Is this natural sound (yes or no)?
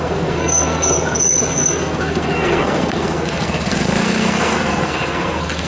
no